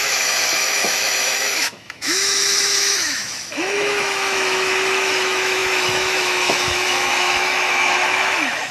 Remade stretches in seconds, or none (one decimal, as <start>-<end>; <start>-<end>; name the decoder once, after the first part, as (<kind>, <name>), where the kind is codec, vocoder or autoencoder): 0.0-8.7 (autoencoder, DAC-VAE)